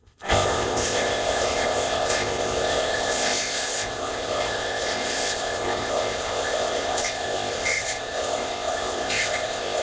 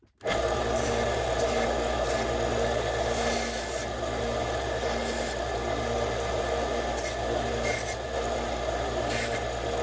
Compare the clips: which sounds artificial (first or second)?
first